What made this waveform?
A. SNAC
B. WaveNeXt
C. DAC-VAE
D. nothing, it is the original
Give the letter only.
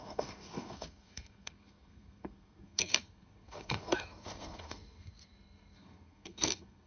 A